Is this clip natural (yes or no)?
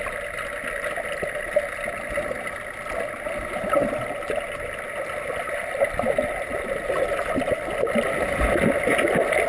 yes